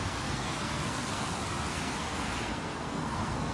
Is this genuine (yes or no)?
no